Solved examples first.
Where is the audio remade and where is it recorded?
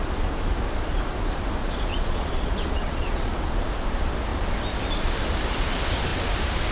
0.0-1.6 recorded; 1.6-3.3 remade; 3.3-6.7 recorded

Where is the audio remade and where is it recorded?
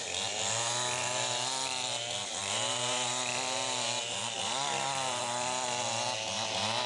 0.0-6.9 recorded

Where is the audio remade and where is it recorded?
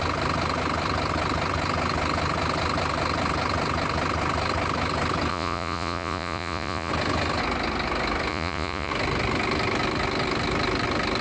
0.0-5.3 recorded; 5.3-6.9 remade; 6.9-8.3 recorded; 8.3-8.9 remade; 8.9-11.2 recorded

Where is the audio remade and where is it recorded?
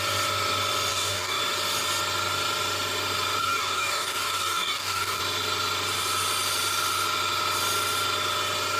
0.0-0.9 recorded; 0.9-1.4 remade; 1.4-3.4 recorded; 3.4-5.2 remade; 5.2-8.8 recorded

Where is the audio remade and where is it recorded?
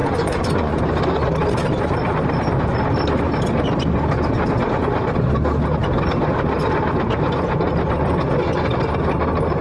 0.0-0.8 remade; 0.8-9.6 recorded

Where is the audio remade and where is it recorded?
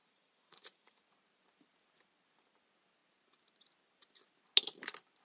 0.0-1.0 remade; 1.0-5.2 recorded